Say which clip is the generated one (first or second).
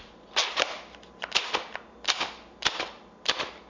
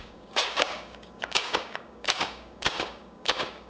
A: second